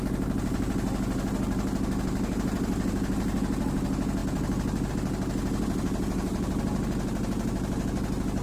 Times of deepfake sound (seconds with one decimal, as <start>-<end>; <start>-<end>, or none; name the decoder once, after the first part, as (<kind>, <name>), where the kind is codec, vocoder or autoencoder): none